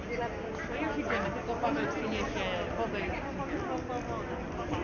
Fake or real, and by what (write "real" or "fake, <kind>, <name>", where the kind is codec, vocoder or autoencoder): real